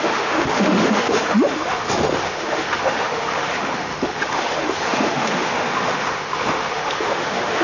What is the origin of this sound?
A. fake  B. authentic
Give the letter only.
A